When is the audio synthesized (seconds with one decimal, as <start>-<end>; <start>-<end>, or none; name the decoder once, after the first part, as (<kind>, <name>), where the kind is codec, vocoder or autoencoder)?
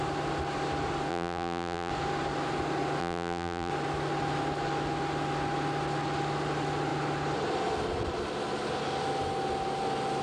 1.1-1.9 (vocoder, BigVGAN v2); 3.0-3.7